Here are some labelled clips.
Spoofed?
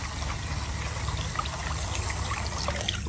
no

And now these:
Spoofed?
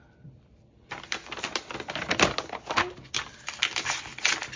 no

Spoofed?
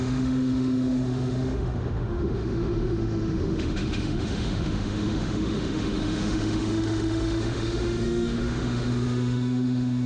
yes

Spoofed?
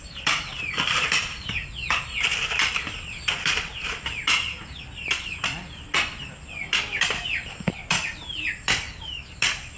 yes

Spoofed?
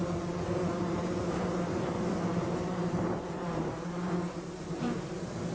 yes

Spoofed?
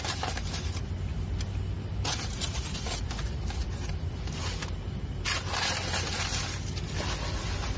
no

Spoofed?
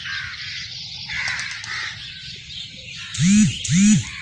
no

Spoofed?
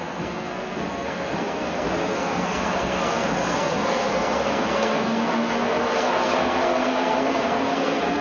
yes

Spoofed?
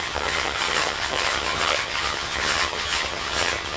yes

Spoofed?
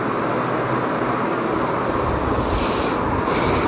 no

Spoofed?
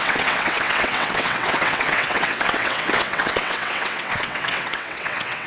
yes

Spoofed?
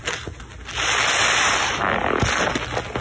no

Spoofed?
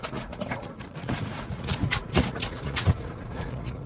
yes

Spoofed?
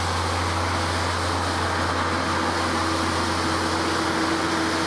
no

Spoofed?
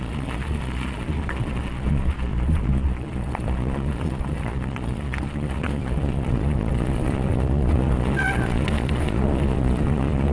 yes